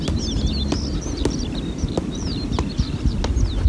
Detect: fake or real real